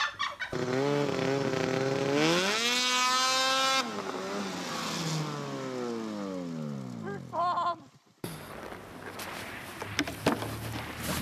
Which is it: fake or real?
real